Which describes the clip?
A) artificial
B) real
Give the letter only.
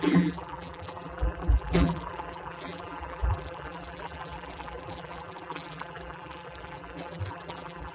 A